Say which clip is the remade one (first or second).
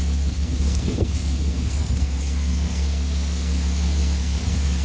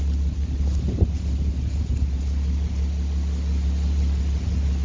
first